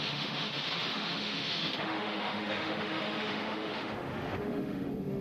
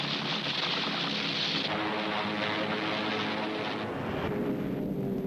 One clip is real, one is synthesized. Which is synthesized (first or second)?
first